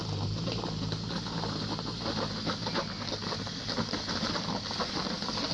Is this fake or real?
real